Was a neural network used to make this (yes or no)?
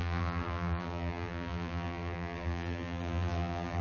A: yes